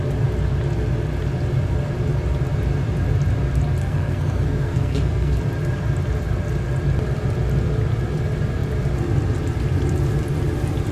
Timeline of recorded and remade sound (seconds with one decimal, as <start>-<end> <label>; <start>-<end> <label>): 0.0-3.8 recorded; 3.8-5.4 remade; 5.4-10.9 recorded